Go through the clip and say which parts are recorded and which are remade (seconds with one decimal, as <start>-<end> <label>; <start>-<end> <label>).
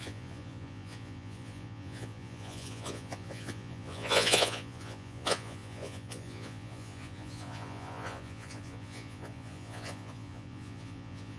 0.0-11.4 remade